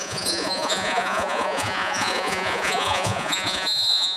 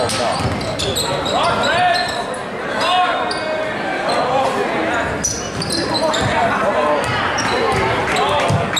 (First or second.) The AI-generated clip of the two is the first